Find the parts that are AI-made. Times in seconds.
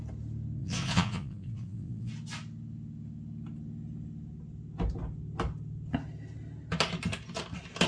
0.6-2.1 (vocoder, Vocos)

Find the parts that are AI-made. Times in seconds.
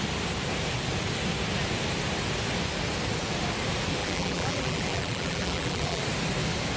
4.0-6.0 (vocoder, BigVGAN v2)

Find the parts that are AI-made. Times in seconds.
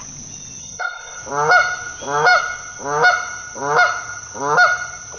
0.6-1.2 (codec, SNAC)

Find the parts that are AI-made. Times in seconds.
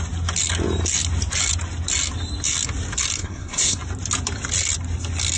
3.2-3.8 (codec, SNAC)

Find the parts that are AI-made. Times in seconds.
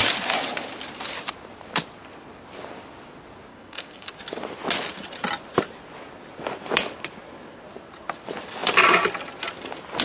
3.5-4.2 (codec, DAC)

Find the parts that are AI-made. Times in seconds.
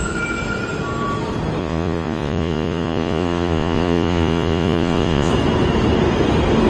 1.6-5.3 (vocoder, Vocos)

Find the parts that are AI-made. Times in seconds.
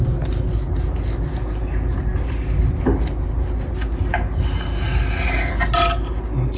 none